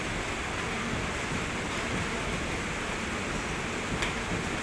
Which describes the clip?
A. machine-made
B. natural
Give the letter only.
B